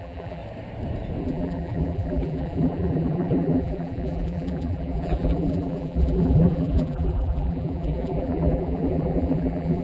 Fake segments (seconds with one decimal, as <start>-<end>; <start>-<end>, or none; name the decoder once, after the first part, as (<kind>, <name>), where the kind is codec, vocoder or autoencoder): 0.0-0.4 (vocoder, BigVGAN v2); 1.2-9.8